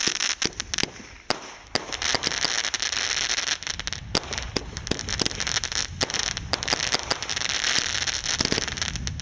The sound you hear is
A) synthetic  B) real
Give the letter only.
B